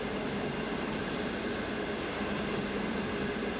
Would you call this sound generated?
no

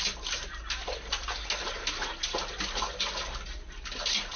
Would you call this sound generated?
no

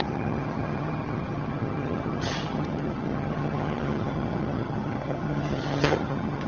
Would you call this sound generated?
yes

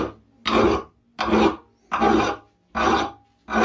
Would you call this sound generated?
no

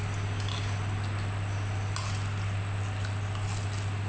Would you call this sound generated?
no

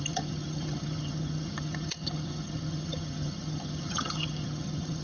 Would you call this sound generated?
yes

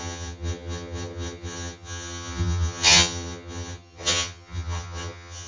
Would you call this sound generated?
yes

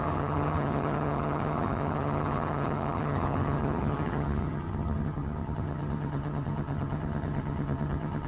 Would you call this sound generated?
yes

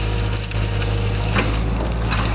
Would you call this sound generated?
no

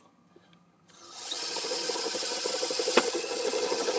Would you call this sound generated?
yes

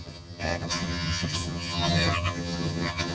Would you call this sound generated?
yes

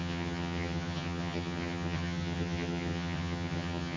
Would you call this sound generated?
yes